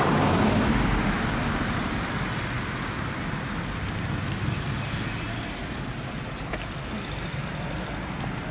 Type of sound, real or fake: real